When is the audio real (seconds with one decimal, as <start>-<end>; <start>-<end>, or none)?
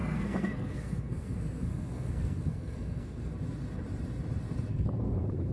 3.3-4.7